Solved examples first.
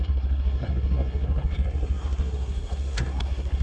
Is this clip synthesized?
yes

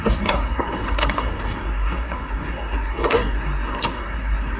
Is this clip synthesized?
yes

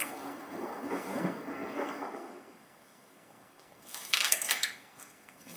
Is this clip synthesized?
yes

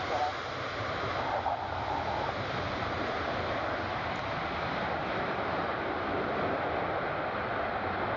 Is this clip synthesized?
no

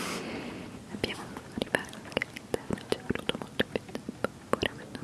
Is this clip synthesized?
no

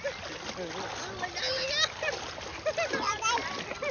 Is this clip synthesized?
no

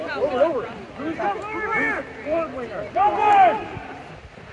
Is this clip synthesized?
no